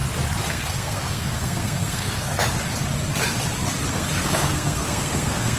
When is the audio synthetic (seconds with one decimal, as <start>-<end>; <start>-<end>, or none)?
0.5-2.3; 3.9-5.6